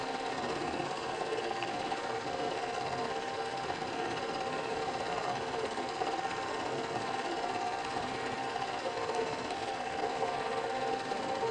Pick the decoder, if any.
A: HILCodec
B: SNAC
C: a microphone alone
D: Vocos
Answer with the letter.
B